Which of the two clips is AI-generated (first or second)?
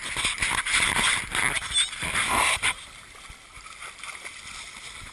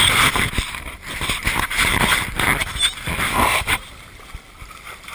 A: second